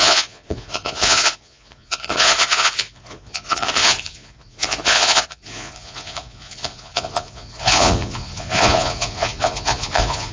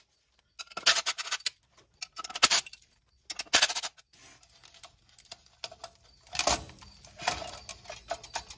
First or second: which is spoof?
first